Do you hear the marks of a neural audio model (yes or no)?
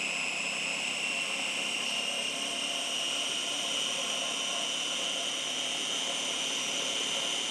no